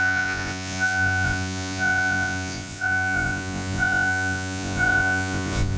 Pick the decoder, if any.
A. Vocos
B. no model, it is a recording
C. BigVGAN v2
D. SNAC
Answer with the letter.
A